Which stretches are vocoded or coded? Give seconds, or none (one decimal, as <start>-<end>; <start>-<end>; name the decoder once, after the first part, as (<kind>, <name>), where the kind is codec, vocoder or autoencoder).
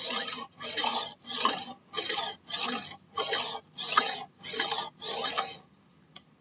0.9-1.6 (vocoder, BigVGAN v2)